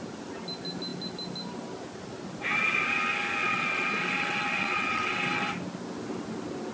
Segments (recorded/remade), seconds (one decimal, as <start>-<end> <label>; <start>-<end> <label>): 0.0-3.4 recorded; 3.4-5.5 remade; 5.5-6.7 recorded